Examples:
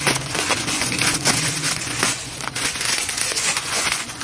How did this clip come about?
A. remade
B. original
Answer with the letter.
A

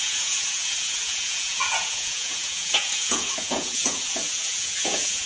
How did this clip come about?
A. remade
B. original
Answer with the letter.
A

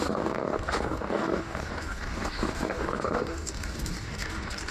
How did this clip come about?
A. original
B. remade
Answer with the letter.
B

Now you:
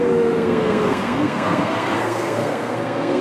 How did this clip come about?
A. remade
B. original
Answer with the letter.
A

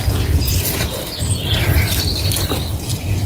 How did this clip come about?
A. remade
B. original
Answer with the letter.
B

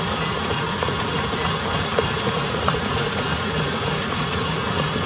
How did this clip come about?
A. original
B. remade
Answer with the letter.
B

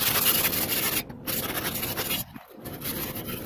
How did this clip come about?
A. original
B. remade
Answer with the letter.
A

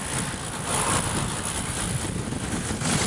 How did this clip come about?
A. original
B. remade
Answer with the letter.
A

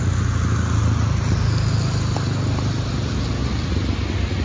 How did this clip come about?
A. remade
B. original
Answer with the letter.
B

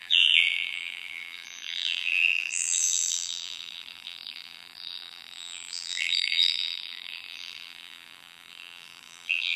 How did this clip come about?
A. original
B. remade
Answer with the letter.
B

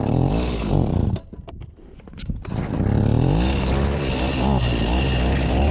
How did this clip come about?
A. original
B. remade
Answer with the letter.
A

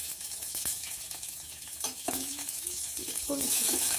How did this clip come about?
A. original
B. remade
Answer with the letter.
B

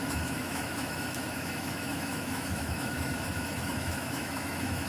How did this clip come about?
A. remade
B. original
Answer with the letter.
A